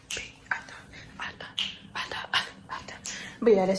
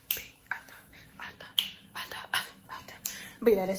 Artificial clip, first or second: second